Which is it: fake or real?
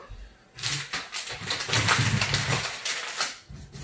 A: real